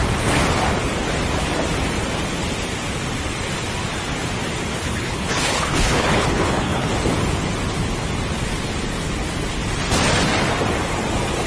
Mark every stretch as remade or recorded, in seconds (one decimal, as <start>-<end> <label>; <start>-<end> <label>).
0.0-4.7 recorded; 4.7-6.9 remade; 6.9-11.5 recorded